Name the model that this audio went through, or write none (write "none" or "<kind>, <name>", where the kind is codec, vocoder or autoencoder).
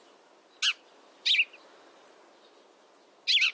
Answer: none